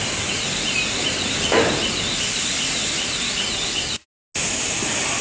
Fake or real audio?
real